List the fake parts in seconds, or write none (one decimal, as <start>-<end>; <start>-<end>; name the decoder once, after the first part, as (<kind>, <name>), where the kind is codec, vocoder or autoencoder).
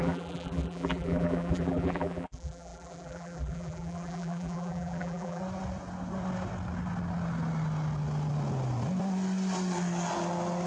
0.0-5.4 (vocoder, BigVGAN v2)